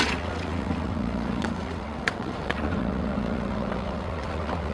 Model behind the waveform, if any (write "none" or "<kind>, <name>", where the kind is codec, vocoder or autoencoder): vocoder, WaveNeXt